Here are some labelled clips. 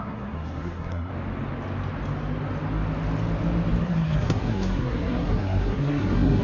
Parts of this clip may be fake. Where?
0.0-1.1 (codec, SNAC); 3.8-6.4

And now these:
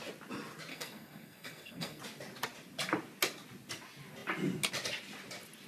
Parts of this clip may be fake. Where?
0.7-2.0 (codec, SNAC)

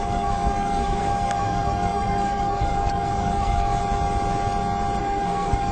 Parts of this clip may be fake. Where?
0.0-3.8 (codec, SNAC); 5.0-5.7

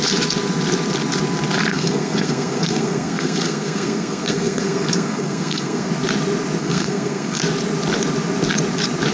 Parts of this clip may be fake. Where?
1.7-5.9 (codec, SNAC); 6.6-7.4

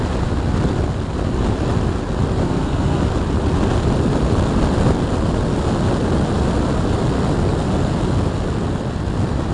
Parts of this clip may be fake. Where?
2.4-3.0 (codec, SNAC)

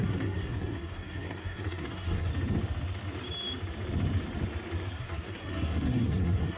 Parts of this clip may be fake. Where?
0.0-2.3 (codec, SNAC); 5.0-6.6

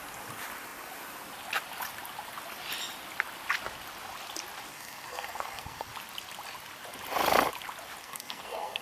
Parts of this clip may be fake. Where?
4.7-5.9 (codec, SNAC); 8.0-8.8

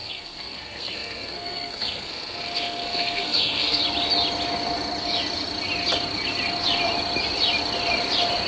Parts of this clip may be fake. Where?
0.0-3.8 (codec, SNAC)